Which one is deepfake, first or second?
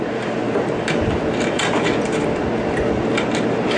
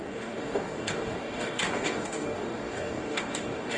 second